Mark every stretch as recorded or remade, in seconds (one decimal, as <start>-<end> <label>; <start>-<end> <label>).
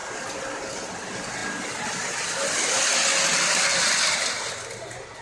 0.0-5.2 recorded